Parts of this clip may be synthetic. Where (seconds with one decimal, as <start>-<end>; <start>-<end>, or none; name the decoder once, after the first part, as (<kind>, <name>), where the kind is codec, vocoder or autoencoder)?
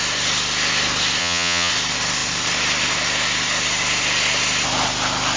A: 1.2-1.7 (vocoder, HiFi-GAN)